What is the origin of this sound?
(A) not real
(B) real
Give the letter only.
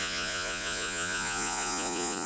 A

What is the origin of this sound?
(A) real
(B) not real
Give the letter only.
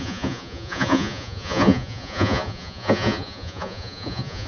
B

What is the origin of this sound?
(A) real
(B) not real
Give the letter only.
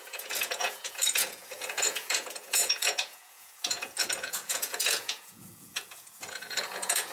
B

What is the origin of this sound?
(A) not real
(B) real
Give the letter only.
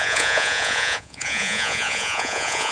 A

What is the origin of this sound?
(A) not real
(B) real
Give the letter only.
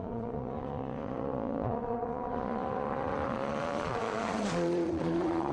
A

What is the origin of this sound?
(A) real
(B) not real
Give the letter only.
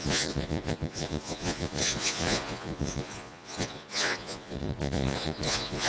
B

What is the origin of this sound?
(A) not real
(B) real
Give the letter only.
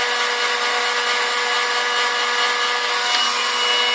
B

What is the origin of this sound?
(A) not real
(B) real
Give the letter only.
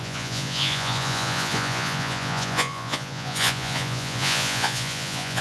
A